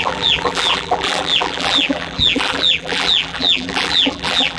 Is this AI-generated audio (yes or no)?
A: yes